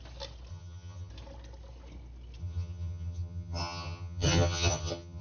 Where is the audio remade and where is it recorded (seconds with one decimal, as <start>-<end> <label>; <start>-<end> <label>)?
0.0-0.5 recorded; 0.5-1.1 remade; 1.1-2.4 recorded; 2.4-5.2 remade